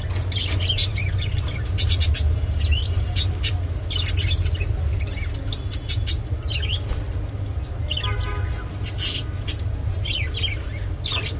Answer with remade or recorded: recorded